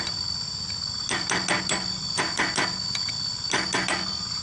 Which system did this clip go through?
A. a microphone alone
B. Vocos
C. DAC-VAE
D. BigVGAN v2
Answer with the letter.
A